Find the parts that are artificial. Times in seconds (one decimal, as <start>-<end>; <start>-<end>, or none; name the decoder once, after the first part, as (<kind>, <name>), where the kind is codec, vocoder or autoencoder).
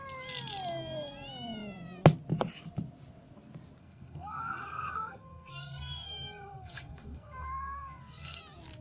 3.8-8.4 (codec, SNAC)